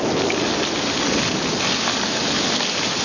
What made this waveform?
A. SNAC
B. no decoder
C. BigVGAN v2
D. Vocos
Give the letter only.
B